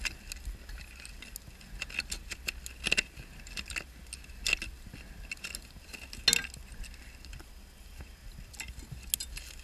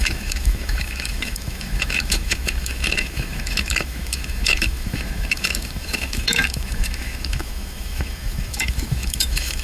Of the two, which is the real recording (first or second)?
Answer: first